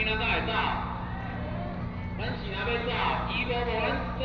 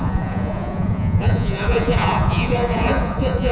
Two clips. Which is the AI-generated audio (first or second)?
second